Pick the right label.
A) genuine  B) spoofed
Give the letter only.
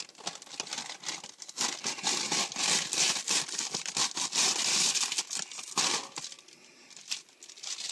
A